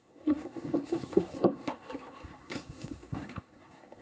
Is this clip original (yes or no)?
no